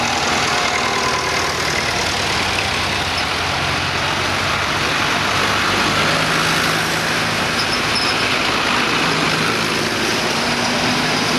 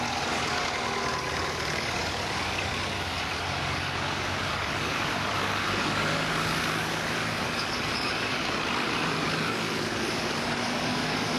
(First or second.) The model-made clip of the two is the second